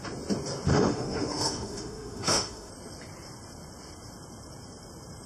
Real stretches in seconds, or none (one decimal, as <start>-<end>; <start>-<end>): 0.0-0.7; 2.7-5.3